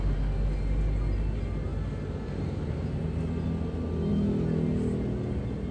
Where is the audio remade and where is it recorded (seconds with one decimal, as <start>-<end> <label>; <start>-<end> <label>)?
0.0-5.7 recorded